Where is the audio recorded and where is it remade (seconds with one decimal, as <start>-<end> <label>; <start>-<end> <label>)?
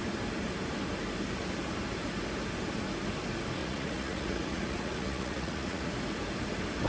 0.0-3.6 recorded; 3.6-5.9 remade; 5.9-6.9 recorded